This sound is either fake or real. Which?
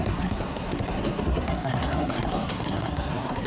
fake